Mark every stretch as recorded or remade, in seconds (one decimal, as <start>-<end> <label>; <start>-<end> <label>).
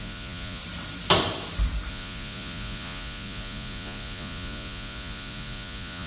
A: 0.0-0.6 remade; 0.6-1.9 recorded; 1.9-6.1 remade